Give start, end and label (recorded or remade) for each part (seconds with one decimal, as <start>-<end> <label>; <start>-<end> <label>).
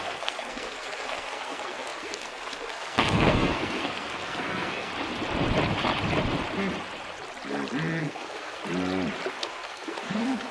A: 0.0-4.9 remade; 4.9-8.0 recorded; 8.0-8.6 remade; 8.6-9.3 recorded; 9.3-10.5 remade